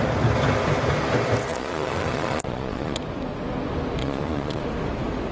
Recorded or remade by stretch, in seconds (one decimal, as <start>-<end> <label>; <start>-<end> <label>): 0.0-1.5 recorded; 1.5-3.0 remade; 3.0-4.0 recorded; 4.0-4.6 remade; 4.6-5.3 recorded